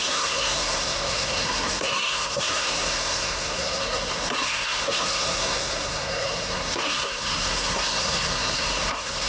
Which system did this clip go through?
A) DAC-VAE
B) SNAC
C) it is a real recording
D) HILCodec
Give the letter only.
B